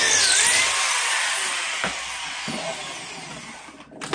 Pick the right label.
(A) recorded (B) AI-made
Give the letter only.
A